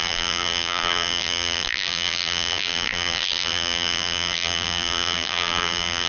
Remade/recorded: remade